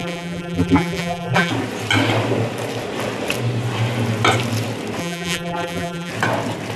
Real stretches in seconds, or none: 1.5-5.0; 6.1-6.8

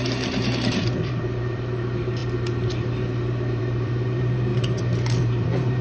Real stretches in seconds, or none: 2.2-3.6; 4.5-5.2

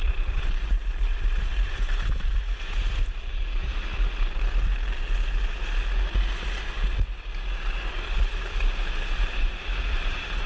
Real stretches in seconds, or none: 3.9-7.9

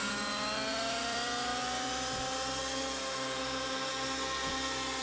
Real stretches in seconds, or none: 0.0-1.0; 1.5-4.5